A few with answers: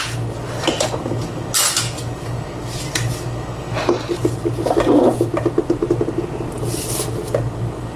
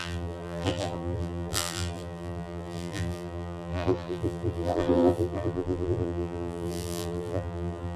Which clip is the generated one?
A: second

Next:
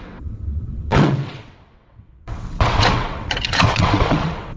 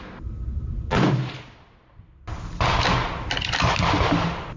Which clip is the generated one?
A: first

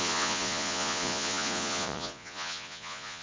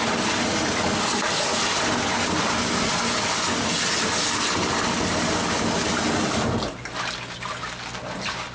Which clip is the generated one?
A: first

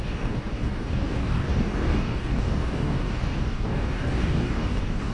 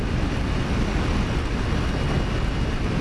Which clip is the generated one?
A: first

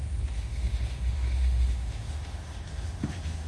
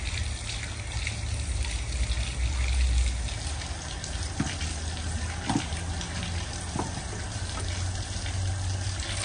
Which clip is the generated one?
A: first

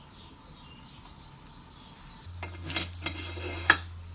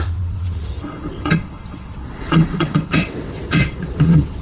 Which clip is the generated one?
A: second